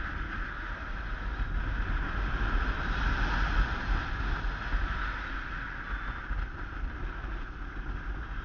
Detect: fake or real real